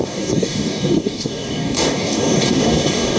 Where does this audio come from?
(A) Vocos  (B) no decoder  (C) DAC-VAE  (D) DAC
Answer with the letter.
D